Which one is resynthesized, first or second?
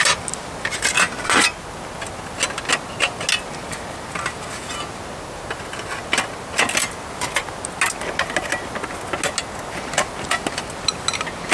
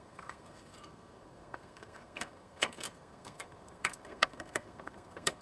second